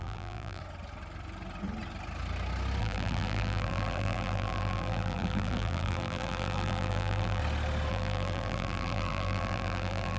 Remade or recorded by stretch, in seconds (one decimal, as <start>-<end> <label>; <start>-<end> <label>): 0.0-0.6 remade; 0.6-2.8 recorded; 2.8-7.4 remade; 7.4-7.9 recorded; 7.9-10.2 remade